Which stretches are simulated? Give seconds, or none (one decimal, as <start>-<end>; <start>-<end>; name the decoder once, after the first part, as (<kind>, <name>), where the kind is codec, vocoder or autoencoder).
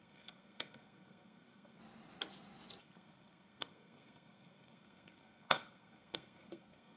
0.0-1.8 (codec, SNAC); 2.8-7.0